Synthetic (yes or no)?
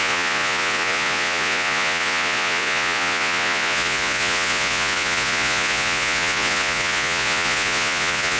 yes